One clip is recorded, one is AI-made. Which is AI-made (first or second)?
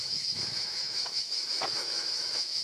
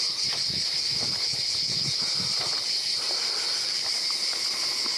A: first